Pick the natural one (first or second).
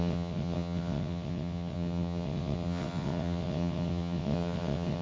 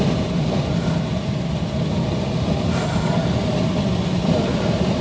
second